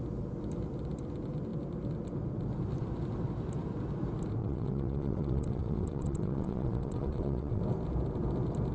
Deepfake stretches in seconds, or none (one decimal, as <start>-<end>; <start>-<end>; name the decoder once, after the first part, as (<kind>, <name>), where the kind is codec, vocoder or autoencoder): 4.4-7.6 (vocoder, WaveNeXt)